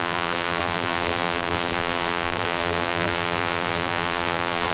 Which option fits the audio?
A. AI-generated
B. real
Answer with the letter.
A